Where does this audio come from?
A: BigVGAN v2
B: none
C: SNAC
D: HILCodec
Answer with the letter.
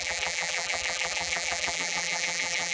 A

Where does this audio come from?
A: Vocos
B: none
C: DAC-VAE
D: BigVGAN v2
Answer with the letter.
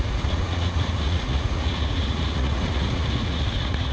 A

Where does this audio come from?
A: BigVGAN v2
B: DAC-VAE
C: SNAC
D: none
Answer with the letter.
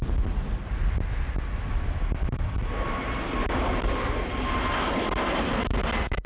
D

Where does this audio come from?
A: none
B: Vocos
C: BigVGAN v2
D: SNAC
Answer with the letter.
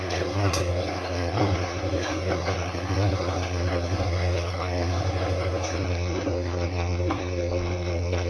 D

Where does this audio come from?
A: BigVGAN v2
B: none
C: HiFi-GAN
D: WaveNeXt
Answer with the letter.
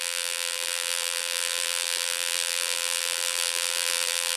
A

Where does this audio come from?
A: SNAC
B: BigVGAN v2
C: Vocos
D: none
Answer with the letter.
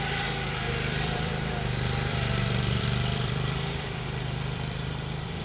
B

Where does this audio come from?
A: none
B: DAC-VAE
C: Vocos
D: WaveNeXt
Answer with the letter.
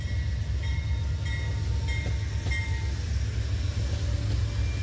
A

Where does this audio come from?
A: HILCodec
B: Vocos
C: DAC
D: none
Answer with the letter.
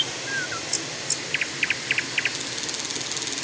D